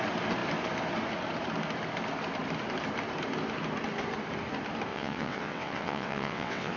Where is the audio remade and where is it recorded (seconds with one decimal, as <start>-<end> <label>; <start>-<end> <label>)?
0.0-4.9 recorded; 4.9-6.8 remade